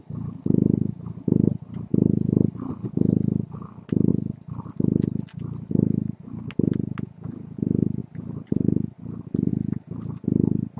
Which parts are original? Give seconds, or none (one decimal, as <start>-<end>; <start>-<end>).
0.0-8.0; 9.5-10.8